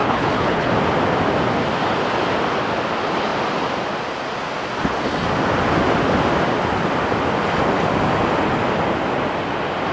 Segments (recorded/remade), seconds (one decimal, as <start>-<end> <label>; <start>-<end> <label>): 0.0-0.7 remade; 0.7-9.9 recorded